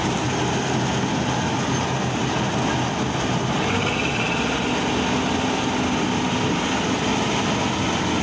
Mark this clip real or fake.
real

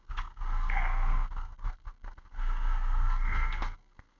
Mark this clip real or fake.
fake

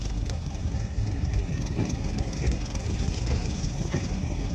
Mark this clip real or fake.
fake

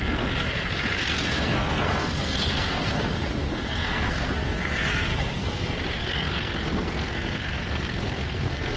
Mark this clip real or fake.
fake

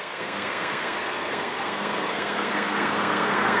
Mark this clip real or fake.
fake